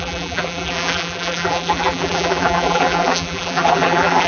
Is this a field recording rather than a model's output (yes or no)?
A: no